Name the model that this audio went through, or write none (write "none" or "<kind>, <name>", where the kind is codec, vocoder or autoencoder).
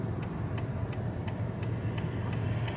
none